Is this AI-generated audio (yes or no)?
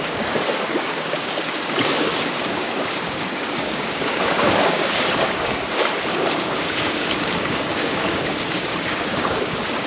yes